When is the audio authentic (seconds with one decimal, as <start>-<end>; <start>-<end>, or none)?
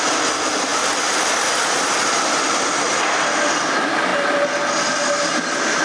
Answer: 0.0-5.8